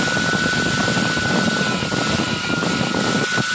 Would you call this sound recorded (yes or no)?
yes